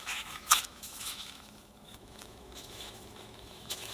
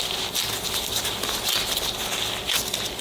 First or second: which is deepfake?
first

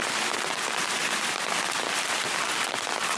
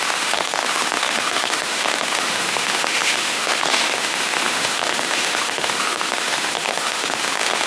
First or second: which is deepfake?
second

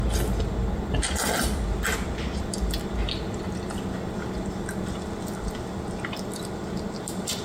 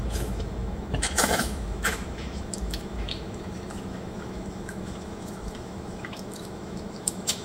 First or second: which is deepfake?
second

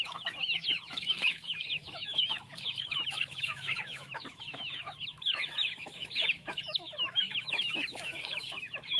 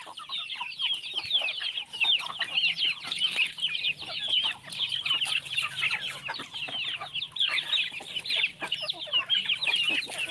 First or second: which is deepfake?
first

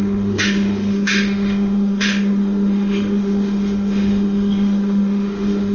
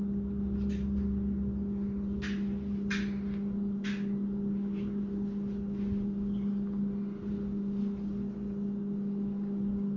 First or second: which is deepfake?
first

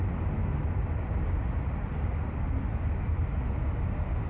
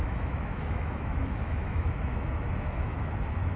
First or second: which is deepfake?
second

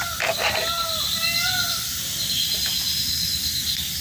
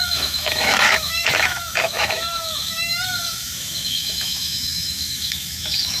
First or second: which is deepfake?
second